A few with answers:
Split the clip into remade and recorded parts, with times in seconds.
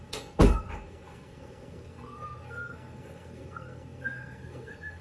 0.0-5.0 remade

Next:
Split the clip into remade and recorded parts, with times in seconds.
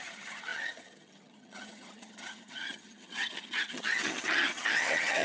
0.0-5.2 remade